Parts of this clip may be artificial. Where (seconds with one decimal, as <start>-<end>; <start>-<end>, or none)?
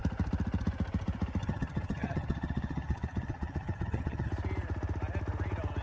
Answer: 1.4-4.3